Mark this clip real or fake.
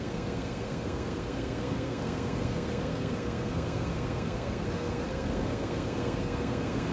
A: fake